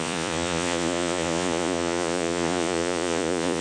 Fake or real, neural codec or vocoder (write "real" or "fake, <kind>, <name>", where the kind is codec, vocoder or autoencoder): fake, vocoder, Vocos